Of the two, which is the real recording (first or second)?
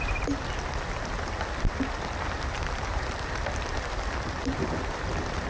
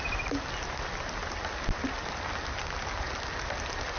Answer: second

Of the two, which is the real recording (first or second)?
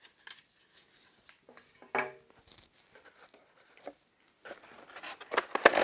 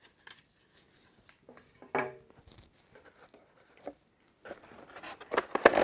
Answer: first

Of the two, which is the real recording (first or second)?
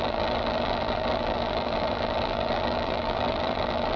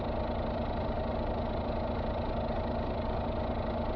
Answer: second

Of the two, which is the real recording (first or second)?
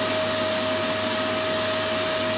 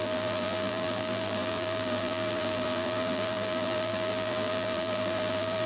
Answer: first